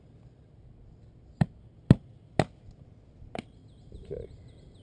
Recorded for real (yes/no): yes